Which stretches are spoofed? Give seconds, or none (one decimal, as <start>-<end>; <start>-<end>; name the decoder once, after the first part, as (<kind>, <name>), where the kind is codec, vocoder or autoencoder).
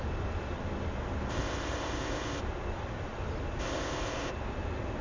1.3-2.4 (codec, ZipCodec); 3.6-4.3